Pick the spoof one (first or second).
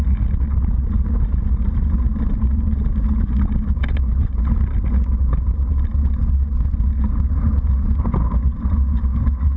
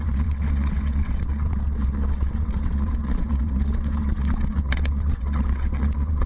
second